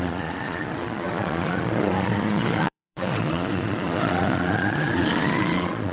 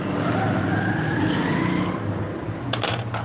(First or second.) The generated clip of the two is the first